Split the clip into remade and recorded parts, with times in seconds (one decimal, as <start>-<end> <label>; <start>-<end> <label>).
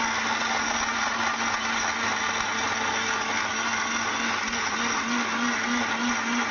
0.0-6.5 recorded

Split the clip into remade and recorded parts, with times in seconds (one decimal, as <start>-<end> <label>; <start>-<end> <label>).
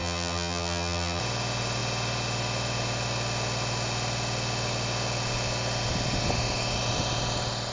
0.0-1.2 remade; 1.2-7.7 recorded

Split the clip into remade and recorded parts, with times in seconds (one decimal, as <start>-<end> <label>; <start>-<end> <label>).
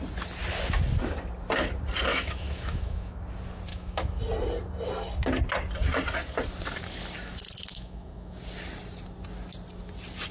0.0-2.1 recorded; 2.1-3.2 remade; 3.2-3.7 recorded; 3.7-4.2 remade; 4.2-7.7 recorded; 7.7-8.4 remade; 8.4-10.3 recorded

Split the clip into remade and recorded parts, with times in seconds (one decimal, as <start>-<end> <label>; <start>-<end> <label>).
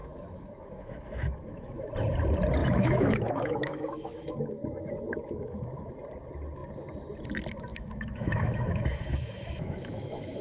0.0-1.9 remade; 1.9-2.6 recorded; 2.6-5.9 remade; 5.9-7.7 recorded; 7.7-10.4 remade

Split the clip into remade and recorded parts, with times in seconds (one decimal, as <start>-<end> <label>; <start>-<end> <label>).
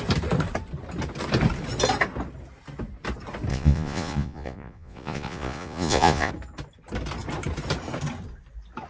0.0-3.5 recorded; 3.5-6.3 remade; 6.3-8.9 recorded